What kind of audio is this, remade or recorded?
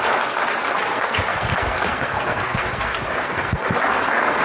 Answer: remade